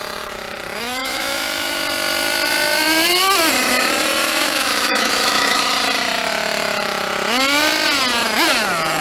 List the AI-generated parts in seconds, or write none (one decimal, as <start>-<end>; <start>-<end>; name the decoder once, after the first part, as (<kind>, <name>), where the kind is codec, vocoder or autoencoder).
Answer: 1.0-1.8 (autoencoder, DAC-VAE); 4.2-5.6